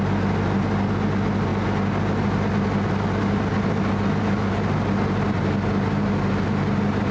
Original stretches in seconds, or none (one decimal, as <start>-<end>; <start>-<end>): 0.0-7.1